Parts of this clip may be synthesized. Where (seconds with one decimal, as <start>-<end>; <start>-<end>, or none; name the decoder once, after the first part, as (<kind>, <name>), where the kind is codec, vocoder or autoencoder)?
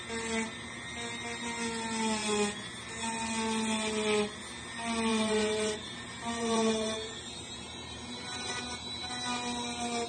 5.1-9.1 (vocoder, BigVGAN v2)